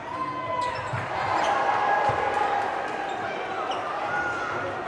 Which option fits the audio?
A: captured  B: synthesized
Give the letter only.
A